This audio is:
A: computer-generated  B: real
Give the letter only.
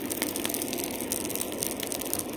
B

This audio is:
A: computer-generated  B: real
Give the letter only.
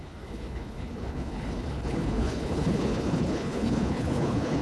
A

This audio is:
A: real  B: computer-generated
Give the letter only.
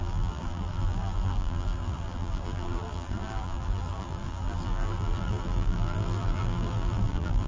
B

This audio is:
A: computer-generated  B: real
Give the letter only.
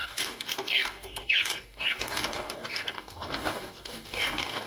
A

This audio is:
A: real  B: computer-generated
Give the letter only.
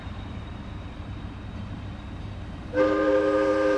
B